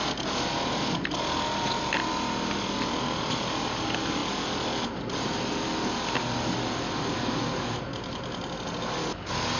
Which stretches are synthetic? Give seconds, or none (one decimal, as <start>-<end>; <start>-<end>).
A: none